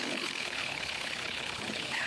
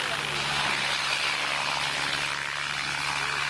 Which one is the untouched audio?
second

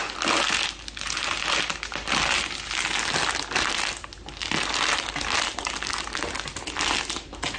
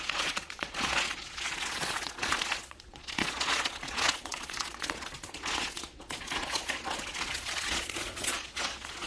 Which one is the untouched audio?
first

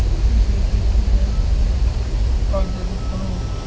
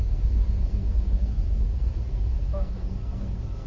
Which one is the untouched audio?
first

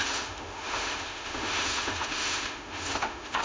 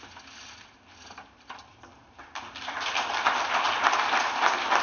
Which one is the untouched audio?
second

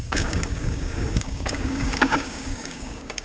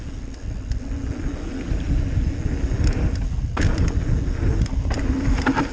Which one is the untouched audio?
second